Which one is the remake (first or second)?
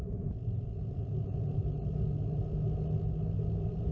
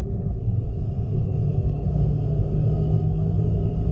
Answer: second